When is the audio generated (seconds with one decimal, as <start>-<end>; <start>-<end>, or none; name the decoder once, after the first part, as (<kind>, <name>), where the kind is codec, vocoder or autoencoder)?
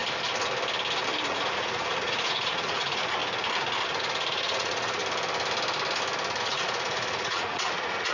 1.3-3.2 (vocoder, Vocos); 4.0-5.0; 6.4-8.1